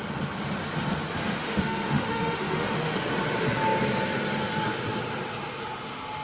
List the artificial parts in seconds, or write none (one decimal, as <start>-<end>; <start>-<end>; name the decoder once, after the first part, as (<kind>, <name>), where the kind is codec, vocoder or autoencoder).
1.2-3.1 (autoencoder, DAC-VAE)